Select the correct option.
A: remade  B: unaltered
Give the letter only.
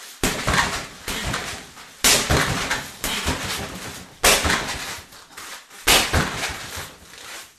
B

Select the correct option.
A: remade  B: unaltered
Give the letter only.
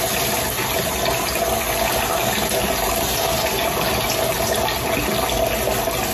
B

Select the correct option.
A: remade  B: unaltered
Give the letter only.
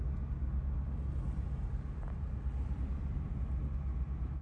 B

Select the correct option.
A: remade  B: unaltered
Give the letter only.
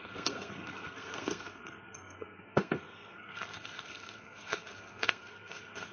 A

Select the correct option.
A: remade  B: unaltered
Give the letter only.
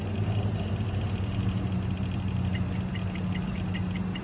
B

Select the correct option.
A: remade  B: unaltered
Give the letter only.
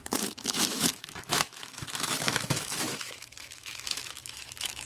A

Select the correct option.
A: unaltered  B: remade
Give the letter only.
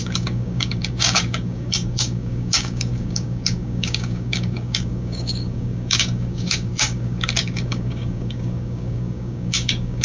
B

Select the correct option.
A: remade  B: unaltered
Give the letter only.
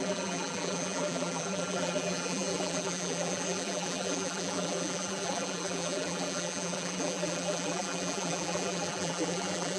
A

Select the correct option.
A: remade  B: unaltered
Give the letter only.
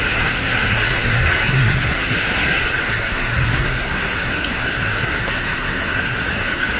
A